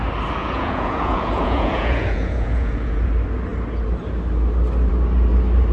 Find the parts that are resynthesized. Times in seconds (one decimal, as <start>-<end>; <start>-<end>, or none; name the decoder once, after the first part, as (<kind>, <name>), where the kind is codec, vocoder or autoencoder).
0.4-3.1 (vocoder, Vocos)